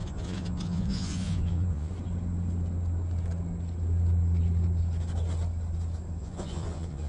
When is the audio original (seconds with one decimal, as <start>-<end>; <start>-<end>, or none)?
1.9-6.2